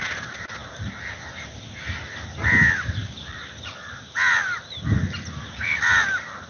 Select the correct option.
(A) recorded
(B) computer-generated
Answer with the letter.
A